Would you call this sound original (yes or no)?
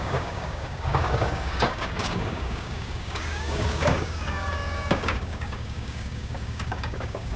no